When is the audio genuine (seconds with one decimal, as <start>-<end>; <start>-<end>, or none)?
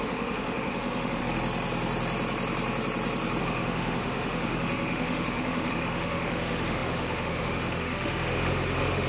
1.2-3.4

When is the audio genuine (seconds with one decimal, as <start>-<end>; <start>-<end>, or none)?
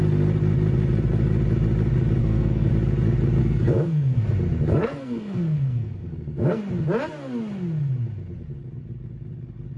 0.0-2.2; 2.7-3.4; 4.2-4.7; 6.6-9.8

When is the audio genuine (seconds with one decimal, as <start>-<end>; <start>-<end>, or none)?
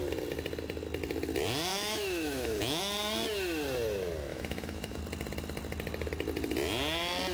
0.0-1.7; 2.8-4.3; 5.0-7.3